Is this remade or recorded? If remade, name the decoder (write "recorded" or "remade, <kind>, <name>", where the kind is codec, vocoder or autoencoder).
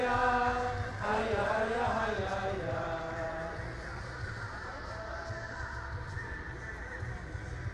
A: recorded